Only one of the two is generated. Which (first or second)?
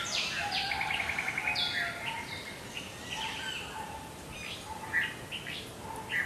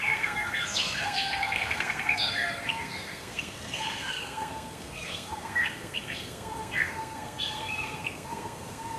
second